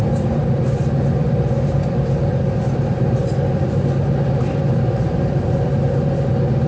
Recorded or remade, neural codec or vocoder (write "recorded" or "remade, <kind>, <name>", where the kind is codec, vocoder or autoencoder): remade, vocoder, BigVGAN v2